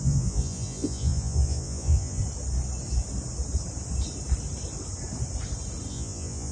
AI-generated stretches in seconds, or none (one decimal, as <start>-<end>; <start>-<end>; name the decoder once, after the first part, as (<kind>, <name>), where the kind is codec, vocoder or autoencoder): 0.0-2.2 (vocoder, Vocos); 5.9-6.5